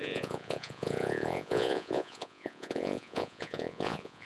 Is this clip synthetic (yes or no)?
yes